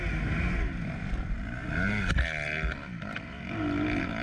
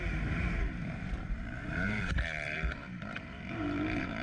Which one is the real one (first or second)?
first